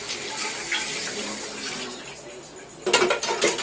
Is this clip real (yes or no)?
yes